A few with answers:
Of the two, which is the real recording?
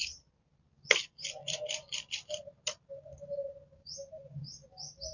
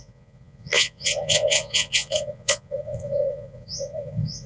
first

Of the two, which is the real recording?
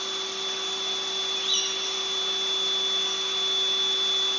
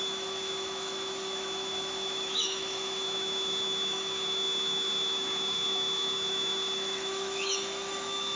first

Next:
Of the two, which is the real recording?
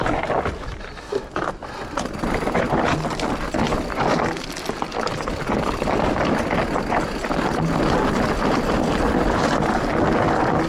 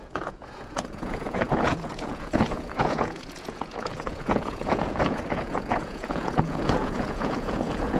first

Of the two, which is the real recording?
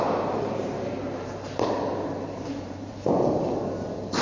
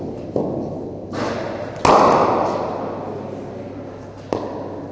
second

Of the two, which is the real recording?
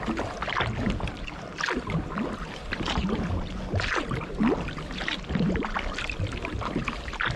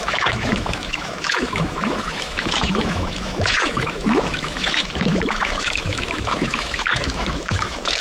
first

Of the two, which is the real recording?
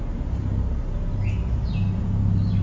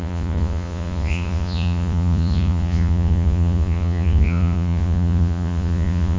first